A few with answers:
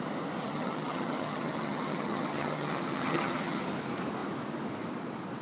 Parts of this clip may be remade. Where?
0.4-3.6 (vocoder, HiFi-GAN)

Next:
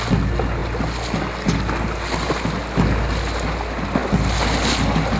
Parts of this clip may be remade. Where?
none

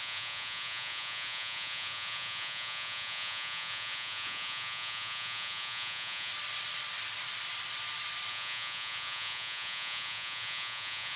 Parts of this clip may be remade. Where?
0.0-6.3 (vocoder, Vocos); 8.3-11.2